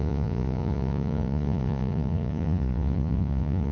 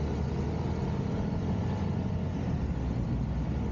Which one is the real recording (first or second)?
second